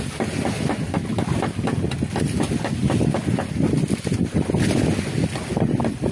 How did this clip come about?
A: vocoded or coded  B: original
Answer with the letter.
B